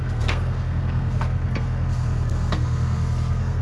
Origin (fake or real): fake